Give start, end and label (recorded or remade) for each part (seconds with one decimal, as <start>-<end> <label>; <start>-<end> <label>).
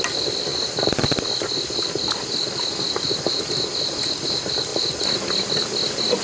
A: 0.0-6.2 recorded